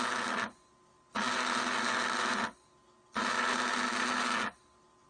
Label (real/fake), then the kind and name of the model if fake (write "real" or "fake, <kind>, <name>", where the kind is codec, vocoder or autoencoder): real